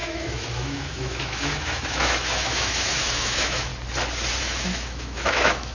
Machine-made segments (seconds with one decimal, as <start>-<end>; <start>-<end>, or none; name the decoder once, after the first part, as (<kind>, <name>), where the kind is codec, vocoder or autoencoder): 0.0-3.7 (autoencoder, DAC-VAE); 4.4-5.7